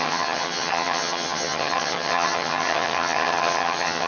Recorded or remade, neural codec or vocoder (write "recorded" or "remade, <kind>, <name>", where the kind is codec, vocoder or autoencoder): remade, vocoder, HiFi-GAN